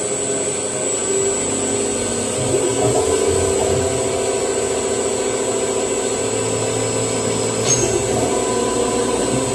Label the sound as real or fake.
real